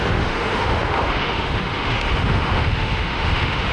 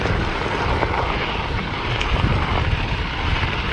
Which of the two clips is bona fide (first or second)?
second